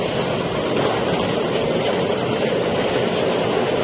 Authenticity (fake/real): real